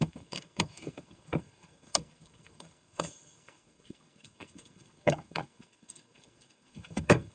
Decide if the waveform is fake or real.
fake